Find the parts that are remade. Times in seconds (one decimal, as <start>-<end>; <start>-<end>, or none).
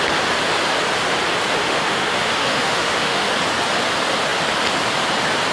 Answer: 1.6-3.3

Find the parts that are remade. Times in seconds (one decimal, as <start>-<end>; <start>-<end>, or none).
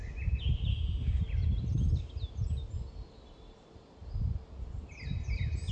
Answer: 0.7-1.2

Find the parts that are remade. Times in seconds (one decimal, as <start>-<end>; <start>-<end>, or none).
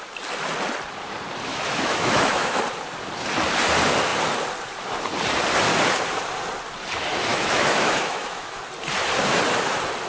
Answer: 1.5-2.6; 7.3-8.6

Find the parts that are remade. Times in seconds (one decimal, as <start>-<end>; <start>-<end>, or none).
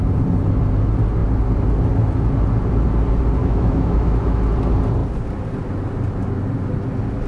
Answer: 3.4-4.4